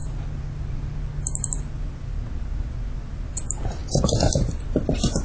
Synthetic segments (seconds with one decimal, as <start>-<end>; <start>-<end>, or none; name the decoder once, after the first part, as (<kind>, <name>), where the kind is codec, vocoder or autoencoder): none